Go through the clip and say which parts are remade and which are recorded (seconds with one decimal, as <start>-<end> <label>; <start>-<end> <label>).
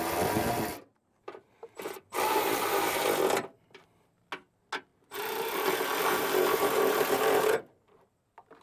0.0-0.9 recorded; 0.9-3.0 remade; 3.0-4.9 recorded; 4.9-8.2 remade; 8.2-8.6 recorded